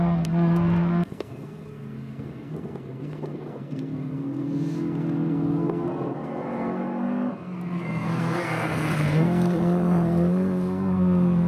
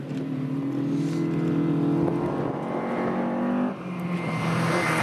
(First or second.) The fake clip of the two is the first